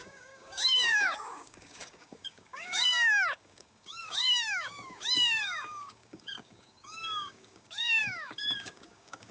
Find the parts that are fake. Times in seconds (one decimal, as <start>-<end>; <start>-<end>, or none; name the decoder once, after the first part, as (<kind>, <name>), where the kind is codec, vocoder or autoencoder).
0.0-9.3 (codec, DAC)